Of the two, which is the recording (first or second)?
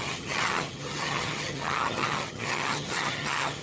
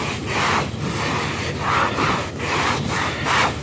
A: second